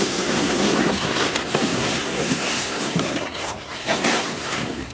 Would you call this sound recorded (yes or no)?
no